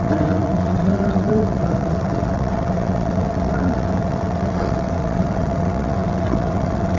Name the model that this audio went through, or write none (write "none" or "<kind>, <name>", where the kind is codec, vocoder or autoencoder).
vocoder, WaveNeXt